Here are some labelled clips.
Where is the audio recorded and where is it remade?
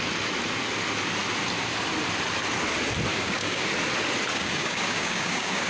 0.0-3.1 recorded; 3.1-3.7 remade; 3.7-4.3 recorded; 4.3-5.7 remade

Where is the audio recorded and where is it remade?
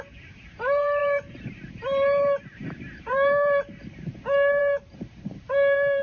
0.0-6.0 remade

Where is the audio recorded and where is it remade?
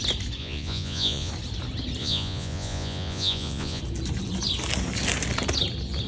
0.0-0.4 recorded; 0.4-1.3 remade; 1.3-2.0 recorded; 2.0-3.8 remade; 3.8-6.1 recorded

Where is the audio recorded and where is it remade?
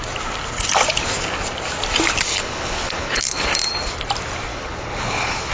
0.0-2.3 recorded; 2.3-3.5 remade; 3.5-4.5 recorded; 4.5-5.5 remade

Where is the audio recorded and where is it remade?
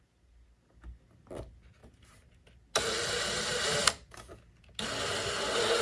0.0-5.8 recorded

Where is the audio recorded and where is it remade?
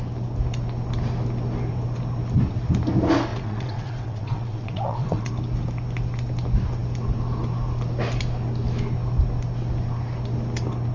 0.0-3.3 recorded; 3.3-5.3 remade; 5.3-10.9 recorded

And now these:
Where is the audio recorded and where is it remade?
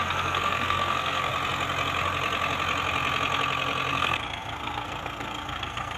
0.0-1.3 remade; 1.3-3.9 recorded; 3.9-6.0 remade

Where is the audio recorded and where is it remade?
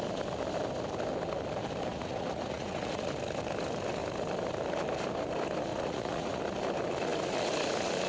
0.0-1.9 recorded; 1.9-3.1 remade; 3.1-5.7 recorded; 5.7-6.4 remade; 6.4-8.1 recorded